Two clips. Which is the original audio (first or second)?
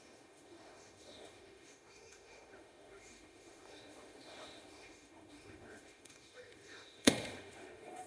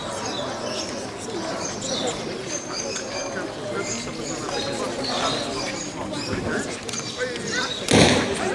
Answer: second